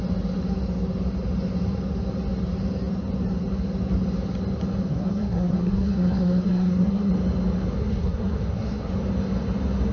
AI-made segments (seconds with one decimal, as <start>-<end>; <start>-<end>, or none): 4.9-7.1; 7.8-8.9